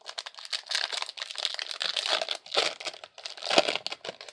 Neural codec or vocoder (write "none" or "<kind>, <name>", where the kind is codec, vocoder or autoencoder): none